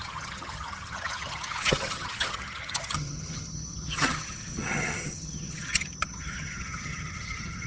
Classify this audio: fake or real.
fake